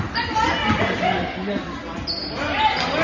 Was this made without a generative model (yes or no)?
yes